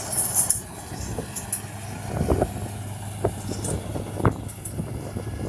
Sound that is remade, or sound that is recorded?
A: recorded